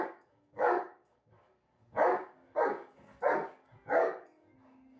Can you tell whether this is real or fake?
fake